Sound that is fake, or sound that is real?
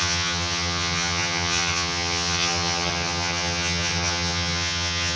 fake